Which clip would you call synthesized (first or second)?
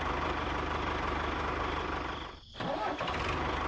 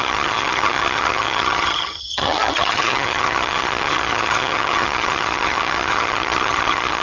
second